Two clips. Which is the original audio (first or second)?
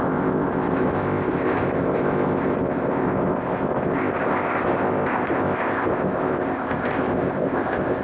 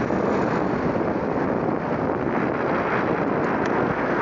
second